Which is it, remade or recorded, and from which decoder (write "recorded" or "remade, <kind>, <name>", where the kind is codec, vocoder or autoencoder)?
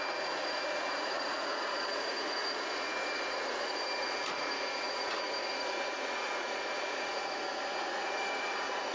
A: remade, vocoder, Vocos